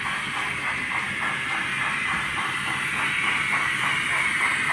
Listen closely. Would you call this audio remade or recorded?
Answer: recorded